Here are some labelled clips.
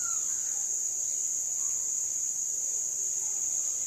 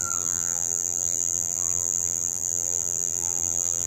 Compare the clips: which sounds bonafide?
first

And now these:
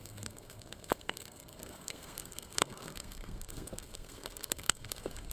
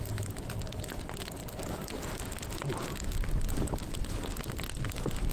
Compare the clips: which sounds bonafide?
second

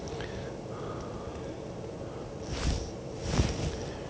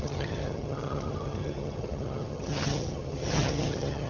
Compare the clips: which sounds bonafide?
first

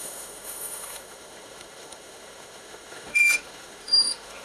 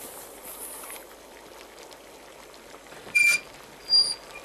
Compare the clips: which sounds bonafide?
second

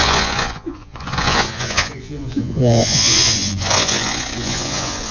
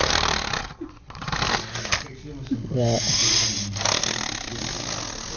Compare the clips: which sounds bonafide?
second